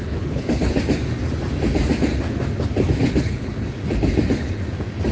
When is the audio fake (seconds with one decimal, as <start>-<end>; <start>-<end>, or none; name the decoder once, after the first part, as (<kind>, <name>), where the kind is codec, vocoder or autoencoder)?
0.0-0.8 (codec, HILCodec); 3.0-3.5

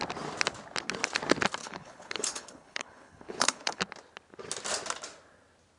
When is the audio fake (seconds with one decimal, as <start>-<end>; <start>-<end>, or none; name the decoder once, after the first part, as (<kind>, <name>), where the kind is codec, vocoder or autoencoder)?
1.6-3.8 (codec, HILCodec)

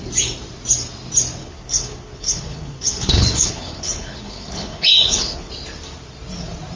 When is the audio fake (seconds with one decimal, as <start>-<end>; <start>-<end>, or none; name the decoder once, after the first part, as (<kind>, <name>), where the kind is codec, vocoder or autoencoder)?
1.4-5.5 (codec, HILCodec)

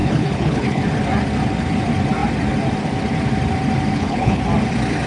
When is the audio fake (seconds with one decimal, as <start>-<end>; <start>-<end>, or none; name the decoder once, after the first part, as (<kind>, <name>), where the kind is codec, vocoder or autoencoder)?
0.0-0.8 (codec, HILCodec); 3.9-4.4